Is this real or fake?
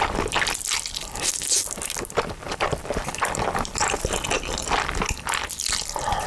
real